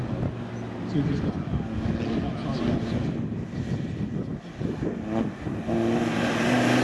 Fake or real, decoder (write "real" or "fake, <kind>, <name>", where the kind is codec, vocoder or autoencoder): real